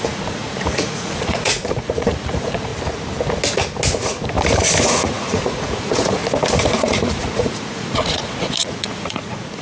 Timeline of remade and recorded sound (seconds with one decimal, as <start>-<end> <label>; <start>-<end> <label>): 0.0-2.7 remade; 2.7-4.8 recorded; 4.8-6.2 remade; 6.2-6.7 recorded; 6.7-9.6 remade